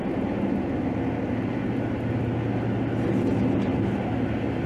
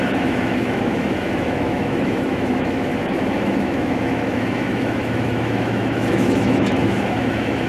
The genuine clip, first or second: first